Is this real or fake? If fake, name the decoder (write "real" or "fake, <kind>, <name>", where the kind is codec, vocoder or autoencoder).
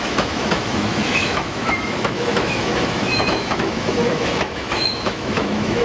fake, autoencoder, DAC-VAE